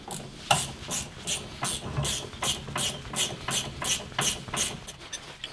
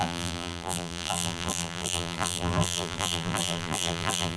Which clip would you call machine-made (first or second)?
second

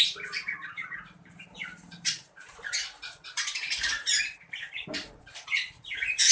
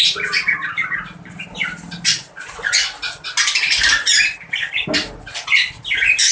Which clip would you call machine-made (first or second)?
first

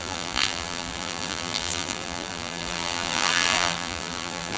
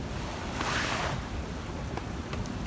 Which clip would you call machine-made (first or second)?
first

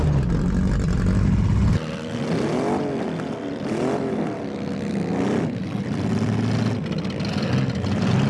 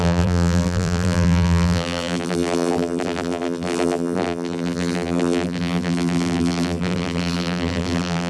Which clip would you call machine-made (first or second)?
second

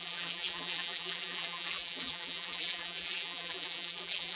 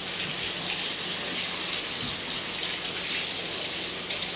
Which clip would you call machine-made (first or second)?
first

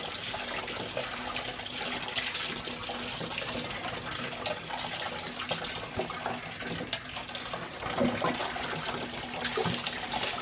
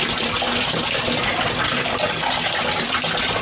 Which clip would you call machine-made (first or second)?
second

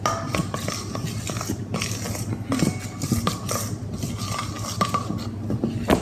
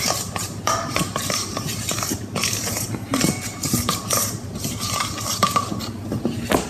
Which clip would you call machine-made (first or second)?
second